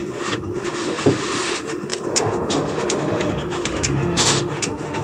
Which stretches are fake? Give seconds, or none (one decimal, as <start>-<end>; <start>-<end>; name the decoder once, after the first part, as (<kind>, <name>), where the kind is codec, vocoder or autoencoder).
0.0-5.0 (autoencoder, DAC-VAE)